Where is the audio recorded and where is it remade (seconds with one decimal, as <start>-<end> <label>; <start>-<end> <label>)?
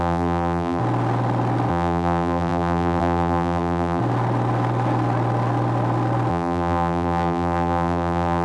0.0-0.8 remade; 0.8-1.7 recorded; 1.7-4.0 remade; 4.0-6.3 recorded; 6.3-8.4 remade